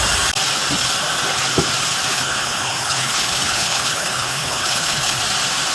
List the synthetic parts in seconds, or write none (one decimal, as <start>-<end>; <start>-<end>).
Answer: 2.1-5.2